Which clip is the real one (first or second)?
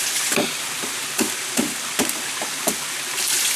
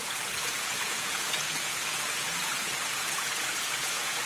first